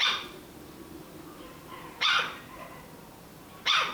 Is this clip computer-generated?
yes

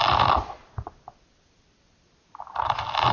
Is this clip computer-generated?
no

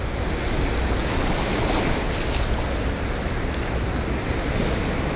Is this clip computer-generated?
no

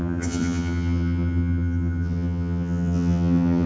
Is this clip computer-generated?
yes